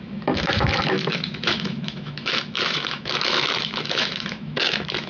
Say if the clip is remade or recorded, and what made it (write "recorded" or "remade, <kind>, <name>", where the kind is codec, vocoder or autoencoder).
remade, autoencoder, DAC-VAE